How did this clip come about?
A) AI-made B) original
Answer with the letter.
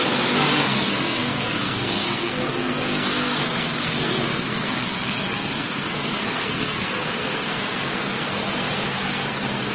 A